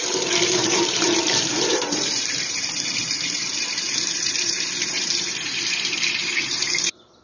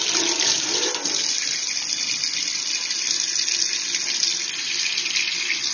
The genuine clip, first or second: second